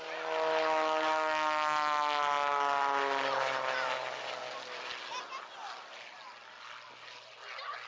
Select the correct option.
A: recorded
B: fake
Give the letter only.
A